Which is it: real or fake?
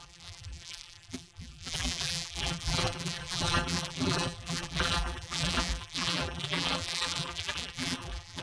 fake